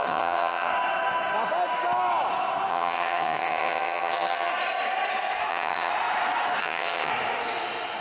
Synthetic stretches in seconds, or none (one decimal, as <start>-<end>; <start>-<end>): 0.0-0.7; 2.7-4.5; 5.5-5.9; 6.6-7.1